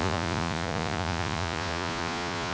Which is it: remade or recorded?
remade